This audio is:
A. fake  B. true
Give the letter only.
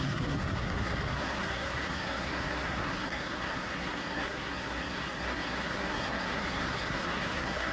A